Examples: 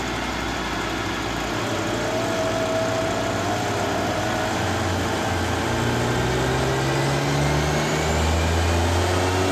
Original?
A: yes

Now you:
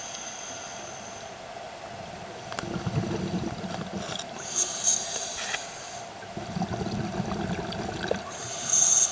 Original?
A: yes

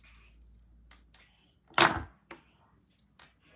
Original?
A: yes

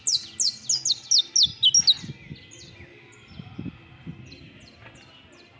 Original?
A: yes